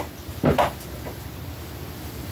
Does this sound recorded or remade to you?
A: recorded